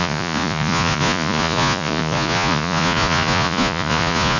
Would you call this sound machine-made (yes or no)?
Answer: yes